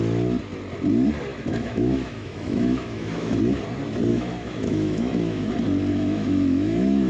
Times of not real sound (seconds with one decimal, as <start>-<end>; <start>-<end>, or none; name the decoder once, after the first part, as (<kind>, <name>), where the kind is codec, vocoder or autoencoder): 1.3-3.4 (autoencoder, DAC-VAE); 4.1-5.5; 5.9-7.1